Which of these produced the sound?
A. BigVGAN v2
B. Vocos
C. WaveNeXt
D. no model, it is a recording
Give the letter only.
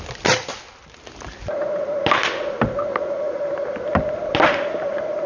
D